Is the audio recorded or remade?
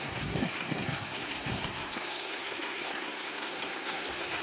remade